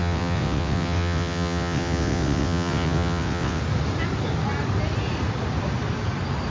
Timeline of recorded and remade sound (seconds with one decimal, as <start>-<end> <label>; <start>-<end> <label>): 0.0-3.6 remade; 3.6-6.5 recorded

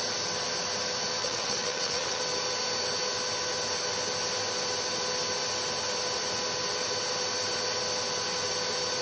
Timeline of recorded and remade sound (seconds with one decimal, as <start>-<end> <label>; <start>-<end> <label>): 0.0-1.2 recorded; 1.2-2.2 remade; 2.2-9.0 recorded